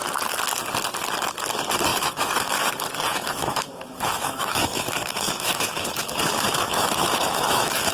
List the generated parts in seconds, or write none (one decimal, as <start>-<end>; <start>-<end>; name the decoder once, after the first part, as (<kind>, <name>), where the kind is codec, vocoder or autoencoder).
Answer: 1.9-2.7 (autoencoder, DAC-VAE); 3.1-7.9